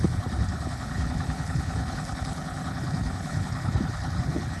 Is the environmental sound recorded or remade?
remade